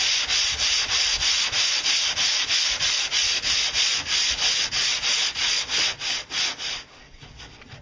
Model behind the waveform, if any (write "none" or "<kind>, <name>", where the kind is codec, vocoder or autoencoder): none